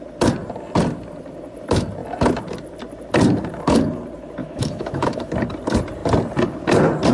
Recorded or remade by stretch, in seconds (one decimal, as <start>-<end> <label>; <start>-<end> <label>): 0.0-4.4 recorded; 4.4-5.3 remade; 5.3-7.1 recorded